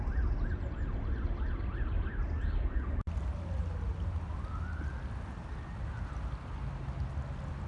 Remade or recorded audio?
recorded